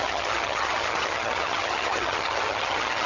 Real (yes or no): no